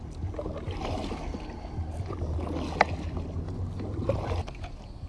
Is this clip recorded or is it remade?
recorded